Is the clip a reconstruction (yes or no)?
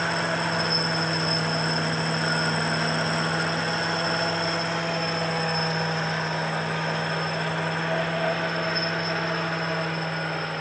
no